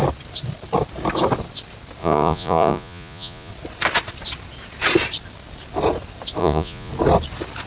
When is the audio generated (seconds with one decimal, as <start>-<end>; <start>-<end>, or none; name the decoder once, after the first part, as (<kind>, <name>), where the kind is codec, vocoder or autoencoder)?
2.0-3.5 (vocoder, Vocos); 6.4-6.9